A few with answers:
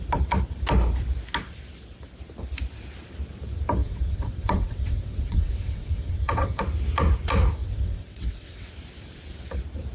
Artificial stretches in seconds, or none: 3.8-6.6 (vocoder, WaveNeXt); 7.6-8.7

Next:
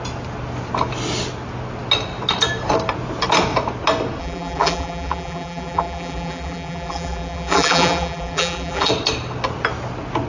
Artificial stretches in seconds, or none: 4.2-8.9 (vocoder, BigVGAN v2)

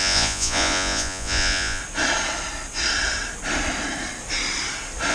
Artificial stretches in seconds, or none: 0.0-1.8 (vocoder, Vocos)

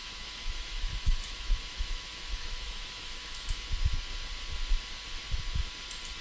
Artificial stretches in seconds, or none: 0.0-3.7 (autoencoder, DAC-VAE)

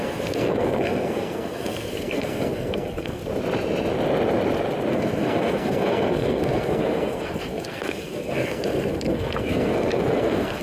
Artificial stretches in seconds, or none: 0.0-3.2 (codec, SNAC); 4.9-10.6

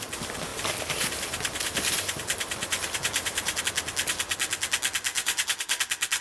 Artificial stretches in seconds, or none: 0.5-3.6 (vocoder, BigVGAN v2); 5.1-5.8

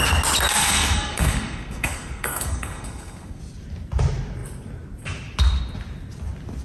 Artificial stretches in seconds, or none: 0.6-3.4 (codec, SNAC)

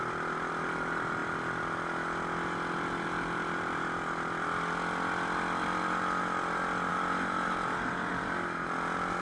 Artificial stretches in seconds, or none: none